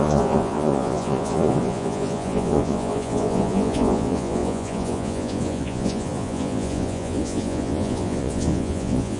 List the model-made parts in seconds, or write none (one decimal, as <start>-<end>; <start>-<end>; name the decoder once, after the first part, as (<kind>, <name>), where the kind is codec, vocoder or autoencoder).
0.0-9.2 (vocoder, Vocos)